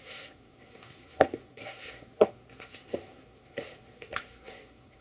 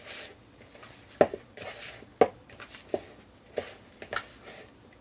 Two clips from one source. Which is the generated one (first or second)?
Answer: first